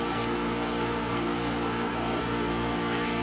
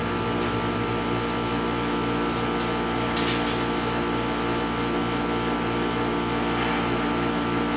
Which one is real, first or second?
second